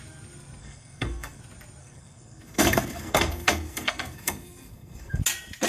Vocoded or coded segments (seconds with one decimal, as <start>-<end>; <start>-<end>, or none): 0.6-1.4; 1.8-5.2